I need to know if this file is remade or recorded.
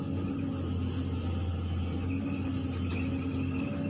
recorded